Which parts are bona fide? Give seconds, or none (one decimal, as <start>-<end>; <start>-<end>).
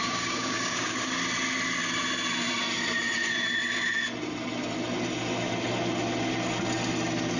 1.2-7.4